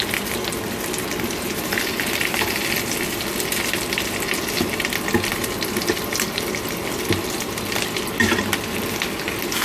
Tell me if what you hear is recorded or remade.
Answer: recorded